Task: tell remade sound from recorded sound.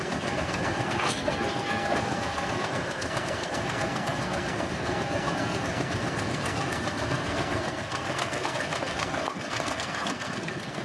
remade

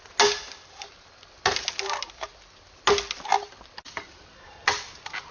recorded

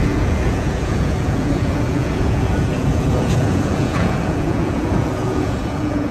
remade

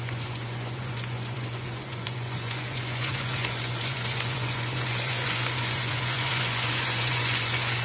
remade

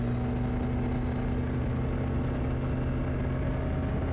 recorded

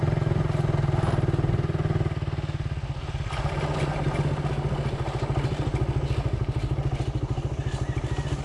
recorded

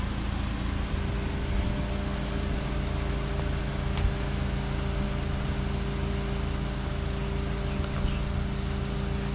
recorded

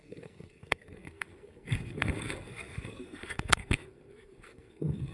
remade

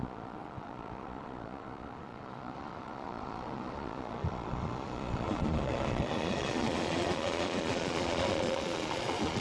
remade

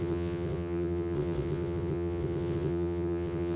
remade